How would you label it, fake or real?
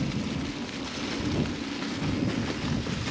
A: real